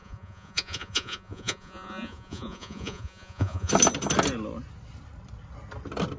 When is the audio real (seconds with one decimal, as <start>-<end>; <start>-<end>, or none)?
3.7-6.2